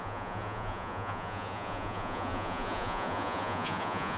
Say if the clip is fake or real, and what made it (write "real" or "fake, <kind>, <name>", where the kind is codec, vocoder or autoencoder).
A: fake, vocoder, Vocos